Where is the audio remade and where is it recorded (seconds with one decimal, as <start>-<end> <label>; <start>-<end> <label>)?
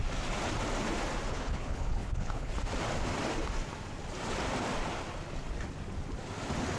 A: 0.0-1.3 recorded; 1.3-2.5 remade; 2.5-6.8 recorded